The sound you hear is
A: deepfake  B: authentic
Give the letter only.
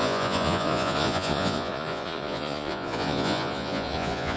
A